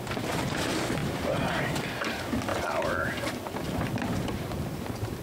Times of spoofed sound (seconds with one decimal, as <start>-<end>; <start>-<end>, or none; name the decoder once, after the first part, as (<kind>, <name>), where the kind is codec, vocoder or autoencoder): 1.0-1.8 (vocoder, BigVGAN v2); 2.5-3.1